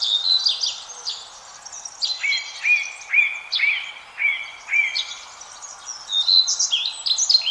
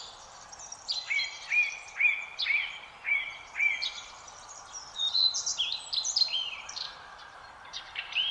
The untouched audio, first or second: first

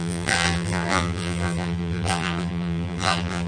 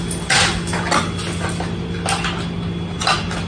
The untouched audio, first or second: second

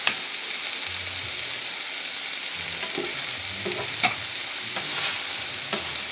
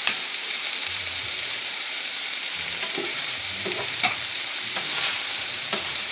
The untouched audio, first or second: first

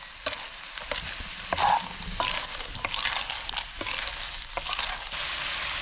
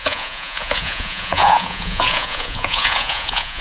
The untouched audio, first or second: first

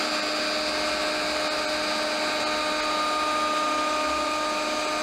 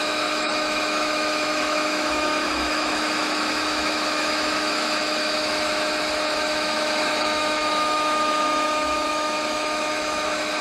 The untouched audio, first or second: first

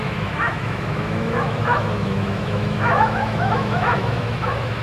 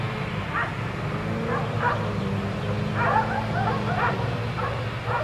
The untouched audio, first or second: second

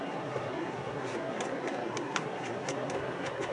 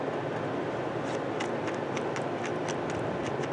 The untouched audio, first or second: second